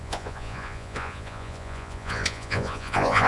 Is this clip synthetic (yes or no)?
yes